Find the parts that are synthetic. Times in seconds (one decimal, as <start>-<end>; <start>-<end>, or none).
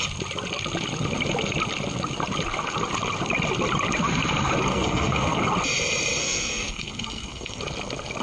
4.7-5.4; 6.2-7.6